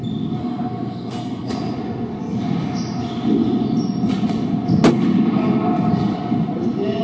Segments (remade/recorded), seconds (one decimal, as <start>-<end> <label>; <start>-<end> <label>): 0.0-0.4 recorded; 0.4-1.5 remade; 1.5-7.0 recorded